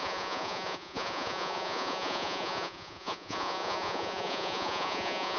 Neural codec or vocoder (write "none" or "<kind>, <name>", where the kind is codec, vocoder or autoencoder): vocoder, Vocos